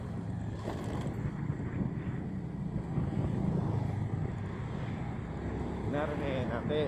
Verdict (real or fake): real